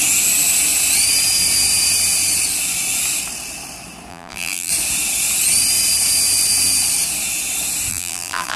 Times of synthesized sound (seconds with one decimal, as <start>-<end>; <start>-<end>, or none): 4.1-4.7; 7.9-8.6